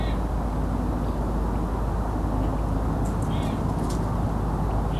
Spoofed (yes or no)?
no